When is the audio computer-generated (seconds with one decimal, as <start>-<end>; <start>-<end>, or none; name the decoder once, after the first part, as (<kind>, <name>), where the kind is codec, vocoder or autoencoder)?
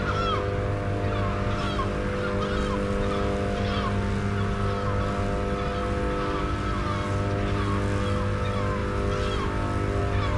none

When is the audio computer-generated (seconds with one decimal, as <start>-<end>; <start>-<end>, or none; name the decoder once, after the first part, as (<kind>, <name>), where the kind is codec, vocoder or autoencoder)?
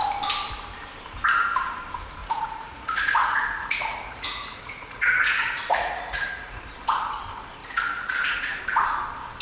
2.2-6.6 (vocoder, Vocos); 7.6-8.6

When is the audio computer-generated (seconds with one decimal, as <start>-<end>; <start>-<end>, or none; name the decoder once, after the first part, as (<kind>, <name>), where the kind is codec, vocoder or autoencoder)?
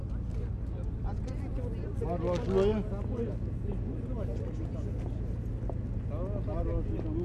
none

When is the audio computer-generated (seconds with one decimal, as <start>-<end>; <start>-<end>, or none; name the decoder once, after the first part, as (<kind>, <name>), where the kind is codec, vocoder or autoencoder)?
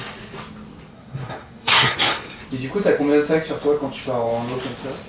0.9-2.4 (codec, SNAC)